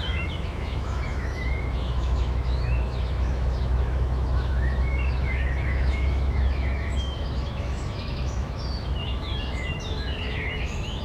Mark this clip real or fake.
fake